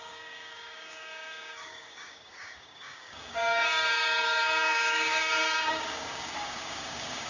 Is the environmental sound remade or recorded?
remade